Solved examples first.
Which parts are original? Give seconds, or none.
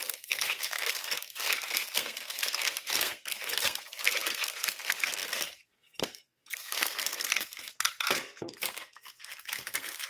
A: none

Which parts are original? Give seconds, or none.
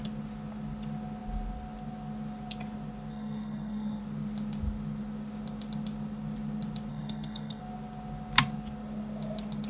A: 0.0-3.1; 4.0-6.9; 7.6-9.7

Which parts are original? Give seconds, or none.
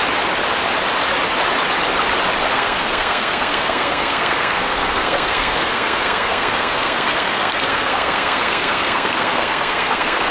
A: 0.0-2.5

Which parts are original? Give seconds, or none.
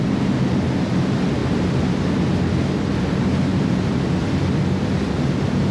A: 0.0-5.7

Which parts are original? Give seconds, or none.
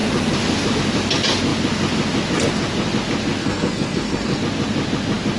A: 0.0-3.4; 4.4-5.4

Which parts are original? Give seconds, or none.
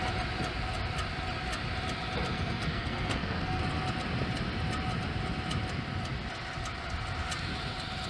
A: 0.0-2.3; 3.6-8.1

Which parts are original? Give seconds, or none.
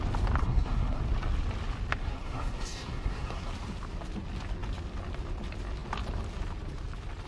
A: 0.0-0.4; 1.0-2.0; 3.5-7.3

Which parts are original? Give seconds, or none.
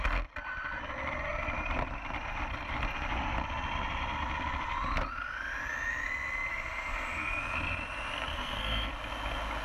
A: 0.0-6.5; 7.4-8.3; 8.9-9.6